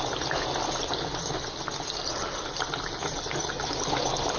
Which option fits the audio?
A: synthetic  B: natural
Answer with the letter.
B